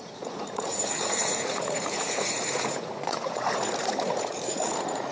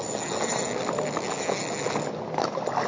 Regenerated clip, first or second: first